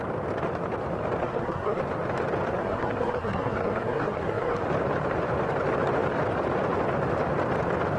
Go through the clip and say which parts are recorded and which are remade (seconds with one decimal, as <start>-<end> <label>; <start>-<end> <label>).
0.0-1.2 recorded; 1.2-1.8 remade; 1.8-2.6 recorded; 2.6-4.6 remade; 4.6-8.0 recorded